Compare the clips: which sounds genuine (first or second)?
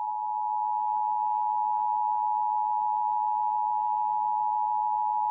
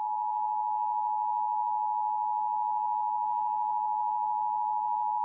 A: first